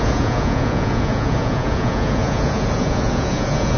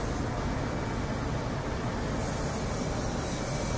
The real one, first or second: second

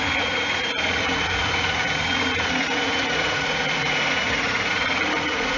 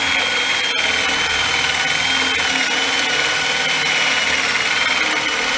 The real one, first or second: second